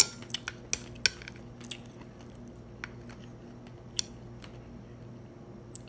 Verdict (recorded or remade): recorded